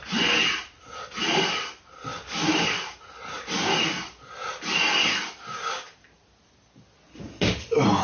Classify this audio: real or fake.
real